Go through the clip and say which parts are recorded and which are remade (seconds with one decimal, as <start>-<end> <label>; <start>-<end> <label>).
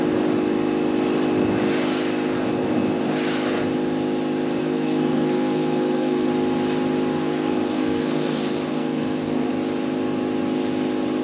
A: 0.0-4.6 recorded; 4.6-6.3 remade; 6.3-7.1 recorded; 7.1-9.5 remade; 9.5-11.2 recorded